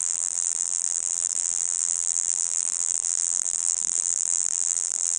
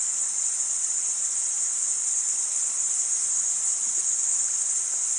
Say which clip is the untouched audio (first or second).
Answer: second